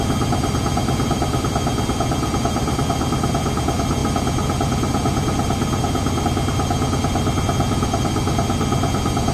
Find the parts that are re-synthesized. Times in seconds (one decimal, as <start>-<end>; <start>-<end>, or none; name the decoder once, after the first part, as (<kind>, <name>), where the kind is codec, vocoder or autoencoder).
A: none